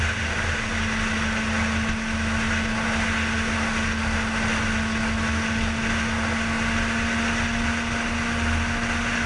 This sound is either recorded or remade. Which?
recorded